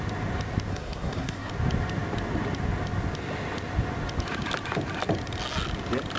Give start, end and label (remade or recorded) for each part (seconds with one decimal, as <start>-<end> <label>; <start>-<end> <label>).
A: 0.0-0.7 recorded; 0.7-1.5 remade; 1.5-6.2 recorded